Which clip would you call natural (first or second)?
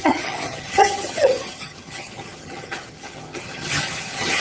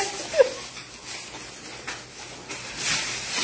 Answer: second